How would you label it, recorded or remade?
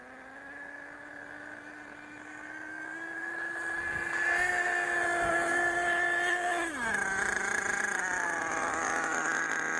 recorded